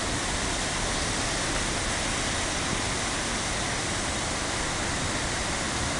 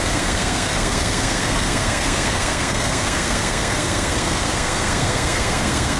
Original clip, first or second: first